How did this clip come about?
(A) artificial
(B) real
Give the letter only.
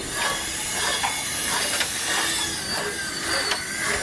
B